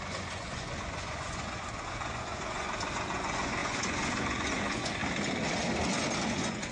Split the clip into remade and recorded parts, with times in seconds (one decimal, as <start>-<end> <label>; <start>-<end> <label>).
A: 0.0-5.0 remade; 5.0-6.3 recorded; 6.3-6.7 remade